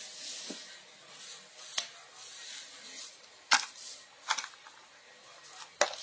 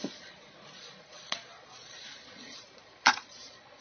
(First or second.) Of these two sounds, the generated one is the second